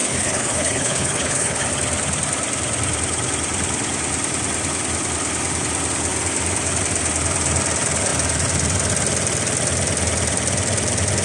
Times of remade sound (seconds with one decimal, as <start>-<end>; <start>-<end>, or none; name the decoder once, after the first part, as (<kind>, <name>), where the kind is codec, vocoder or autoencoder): 0.0-1.7 (codec, HILCodec)